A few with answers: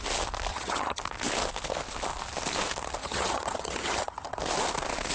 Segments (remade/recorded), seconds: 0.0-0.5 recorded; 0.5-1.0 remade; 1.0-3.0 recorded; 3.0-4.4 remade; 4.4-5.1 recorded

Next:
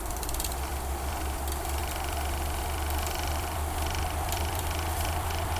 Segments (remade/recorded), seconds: 0.0-5.6 remade

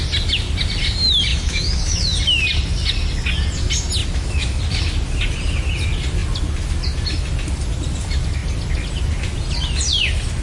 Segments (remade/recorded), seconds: 0.0-1.3 recorded; 1.3-2.2 remade; 2.2-4.0 recorded; 4.0-4.6 remade; 4.6-10.4 recorded

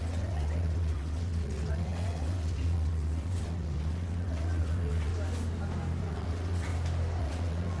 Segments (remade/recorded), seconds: 0.0-5.1 remade; 5.1-6.0 recorded; 6.0-6.7 remade; 6.7-7.2 recorded; 7.2-7.8 remade

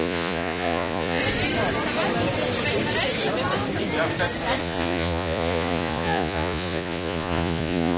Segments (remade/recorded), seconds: 0.0-1.2 remade; 1.2-4.6 recorded; 4.6-8.0 remade